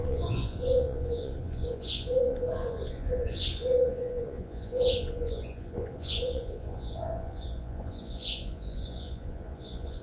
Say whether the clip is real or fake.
fake